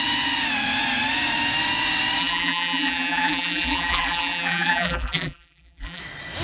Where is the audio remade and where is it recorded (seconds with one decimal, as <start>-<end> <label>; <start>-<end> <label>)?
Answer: 0.0-2.2 recorded; 2.2-6.0 remade; 6.0-6.4 recorded